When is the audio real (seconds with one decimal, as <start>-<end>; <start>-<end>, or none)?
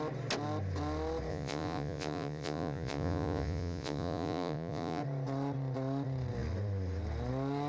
0.0-1.3; 5.0-7.7